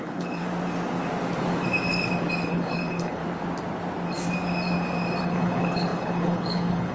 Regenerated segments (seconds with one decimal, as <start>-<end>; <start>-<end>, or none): 0.0-0.4; 2.5-3.2; 5.2-6.9